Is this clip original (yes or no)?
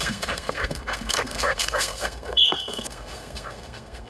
no